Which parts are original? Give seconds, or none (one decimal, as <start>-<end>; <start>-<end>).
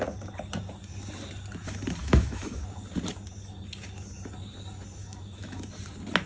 0.0-2.0; 2.6-5.0; 5.7-6.3